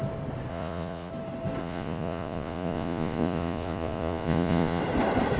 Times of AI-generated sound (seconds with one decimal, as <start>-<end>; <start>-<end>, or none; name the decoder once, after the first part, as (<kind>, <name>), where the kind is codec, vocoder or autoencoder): 0.5-1.1 (vocoder, Vocos); 1.6-4.8